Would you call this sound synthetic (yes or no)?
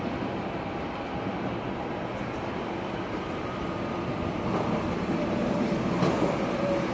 yes